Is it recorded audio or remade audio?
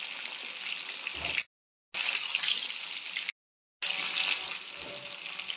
recorded